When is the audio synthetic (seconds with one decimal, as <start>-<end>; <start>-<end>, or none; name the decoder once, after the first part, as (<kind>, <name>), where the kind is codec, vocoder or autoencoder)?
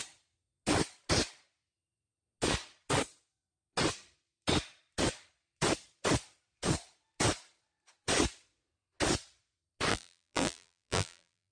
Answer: 9.9-11.5 (vocoder, BigVGAN v2)